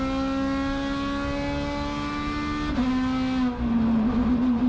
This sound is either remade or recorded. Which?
recorded